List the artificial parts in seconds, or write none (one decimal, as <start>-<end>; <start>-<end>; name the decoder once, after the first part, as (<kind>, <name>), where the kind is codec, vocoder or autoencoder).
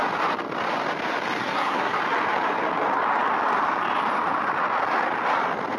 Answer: 1.4-2.0 (codec, SNAC)